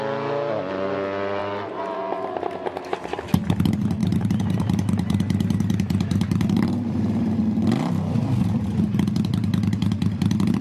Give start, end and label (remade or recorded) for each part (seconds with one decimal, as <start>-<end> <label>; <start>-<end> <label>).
0.0-1.4 recorded; 1.4-2.4 remade; 2.4-4.0 recorded; 4.0-7.4 remade; 7.4-10.6 recorded